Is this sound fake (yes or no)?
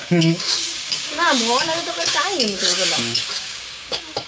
yes